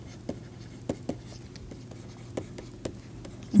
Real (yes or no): yes